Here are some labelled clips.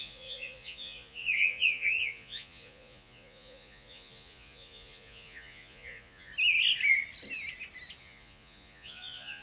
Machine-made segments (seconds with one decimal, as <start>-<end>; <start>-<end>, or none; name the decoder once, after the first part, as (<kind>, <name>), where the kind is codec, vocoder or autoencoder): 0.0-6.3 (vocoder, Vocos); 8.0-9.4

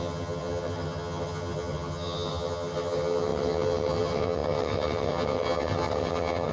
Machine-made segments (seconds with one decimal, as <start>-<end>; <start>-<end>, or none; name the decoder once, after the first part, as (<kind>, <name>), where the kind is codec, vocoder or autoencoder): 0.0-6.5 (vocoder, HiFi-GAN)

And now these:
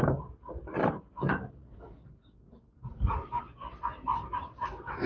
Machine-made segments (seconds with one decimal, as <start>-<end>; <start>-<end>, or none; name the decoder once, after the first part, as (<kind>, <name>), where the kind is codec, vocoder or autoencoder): 1.6-3.4 (codec, DAC)

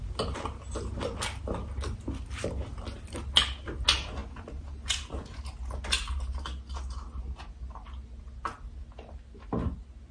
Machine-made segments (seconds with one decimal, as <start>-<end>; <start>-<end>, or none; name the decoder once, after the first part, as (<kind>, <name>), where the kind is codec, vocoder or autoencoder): none